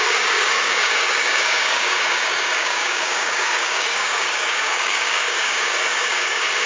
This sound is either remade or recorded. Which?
remade